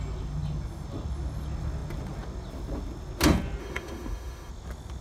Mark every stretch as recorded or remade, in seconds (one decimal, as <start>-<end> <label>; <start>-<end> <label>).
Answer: 0.0-3.6 recorded; 3.6-4.5 remade; 4.5-5.0 recorded

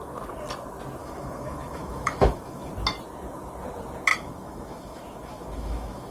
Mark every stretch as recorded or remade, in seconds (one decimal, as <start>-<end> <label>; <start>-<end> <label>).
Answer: 0.0-1.0 recorded; 1.0-2.7 remade; 2.7-4.1 recorded; 4.1-6.1 remade

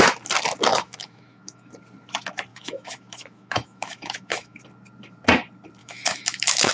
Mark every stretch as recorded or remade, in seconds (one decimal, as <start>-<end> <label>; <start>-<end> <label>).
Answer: 0.0-0.7 recorded; 0.7-1.7 remade; 1.7-2.5 recorded; 2.5-4.6 remade; 4.6-5.8 recorded; 5.8-6.7 remade